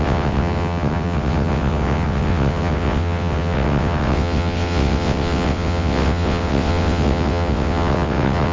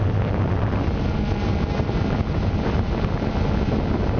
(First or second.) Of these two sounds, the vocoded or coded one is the first